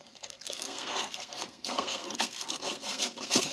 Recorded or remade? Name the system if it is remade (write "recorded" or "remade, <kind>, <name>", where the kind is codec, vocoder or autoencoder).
remade, codec, SNAC